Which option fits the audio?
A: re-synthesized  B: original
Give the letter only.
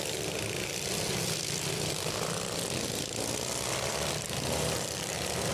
B